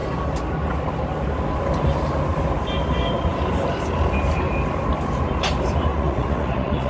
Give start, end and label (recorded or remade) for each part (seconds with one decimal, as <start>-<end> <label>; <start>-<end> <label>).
0.0-5.9 recorded; 5.9-6.9 remade